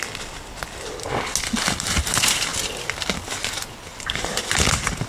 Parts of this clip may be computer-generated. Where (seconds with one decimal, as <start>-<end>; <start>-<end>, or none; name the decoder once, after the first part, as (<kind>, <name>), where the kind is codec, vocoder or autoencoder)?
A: none